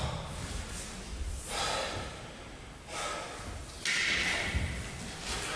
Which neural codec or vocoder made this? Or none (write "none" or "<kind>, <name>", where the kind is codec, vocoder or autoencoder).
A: none